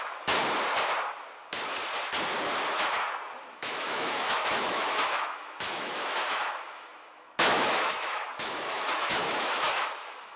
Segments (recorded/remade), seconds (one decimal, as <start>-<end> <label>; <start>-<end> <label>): 0.0-0.4 remade; 0.4-3.5 recorded; 3.5-10.4 remade